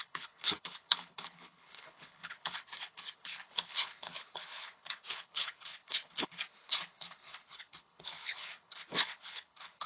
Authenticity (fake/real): fake